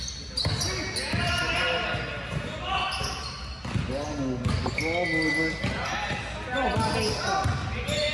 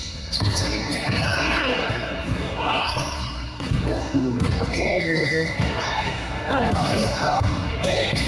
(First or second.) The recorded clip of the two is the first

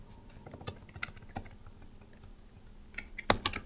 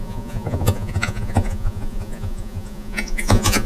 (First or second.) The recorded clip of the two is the first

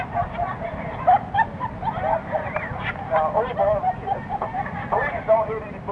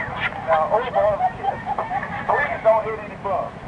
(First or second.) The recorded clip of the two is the second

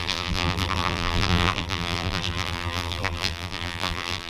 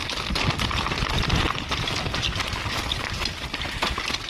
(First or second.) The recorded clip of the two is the second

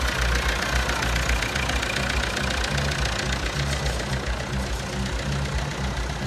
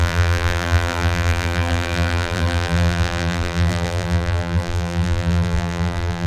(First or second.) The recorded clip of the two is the first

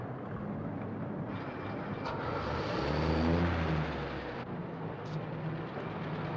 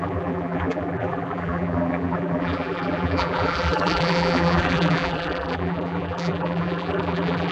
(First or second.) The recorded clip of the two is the first